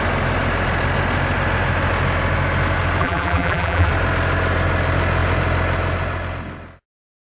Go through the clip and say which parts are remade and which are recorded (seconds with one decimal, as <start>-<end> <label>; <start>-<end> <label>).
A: 0.0-3.0 recorded; 3.0-3.9 remade; 3.9-7.4 recorded